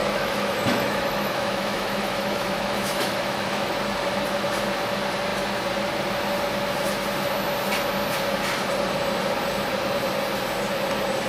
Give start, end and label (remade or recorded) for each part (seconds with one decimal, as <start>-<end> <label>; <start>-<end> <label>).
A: 0.0-3.7 remade; 3.7-11.3 recorded